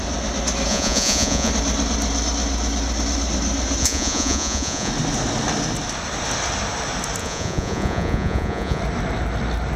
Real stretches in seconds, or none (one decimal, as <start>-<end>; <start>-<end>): 0.0-0.7; 1.5-3.8; 4.9-7.2; 8.8-9.8